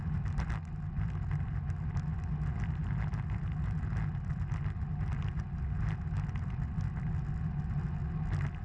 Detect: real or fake real